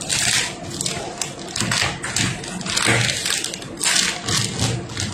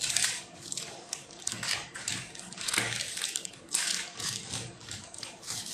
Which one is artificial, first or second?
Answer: second